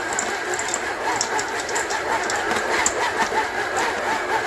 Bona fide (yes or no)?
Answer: yes